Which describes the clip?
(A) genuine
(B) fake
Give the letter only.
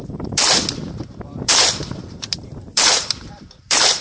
B